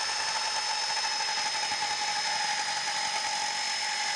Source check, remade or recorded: recorded